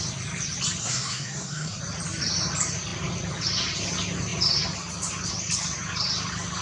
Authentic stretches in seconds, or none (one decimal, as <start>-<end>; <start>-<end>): 0.0-0.8; 1.8-6.6